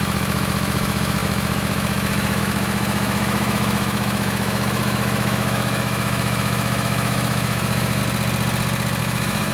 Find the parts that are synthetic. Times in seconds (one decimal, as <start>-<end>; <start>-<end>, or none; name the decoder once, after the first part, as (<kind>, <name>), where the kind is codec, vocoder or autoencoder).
0.0-8.0 (autoencoder, DAC-VAE); 9.0-9.5